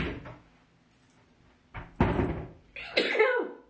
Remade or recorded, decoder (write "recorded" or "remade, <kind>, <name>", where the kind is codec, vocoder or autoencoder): recorded